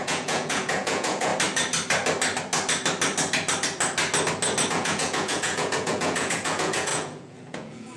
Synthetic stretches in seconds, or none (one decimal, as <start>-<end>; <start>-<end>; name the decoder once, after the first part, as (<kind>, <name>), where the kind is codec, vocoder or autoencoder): 0.0-1.3 (vocoder, Vocos); 4.7-8.0